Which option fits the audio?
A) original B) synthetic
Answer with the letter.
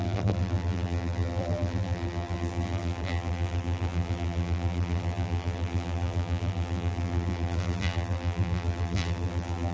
B